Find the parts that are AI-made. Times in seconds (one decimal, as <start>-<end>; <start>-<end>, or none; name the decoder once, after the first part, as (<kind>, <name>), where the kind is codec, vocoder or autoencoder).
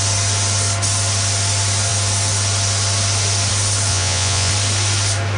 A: 3.9-4.5 (vocoder, Vocos)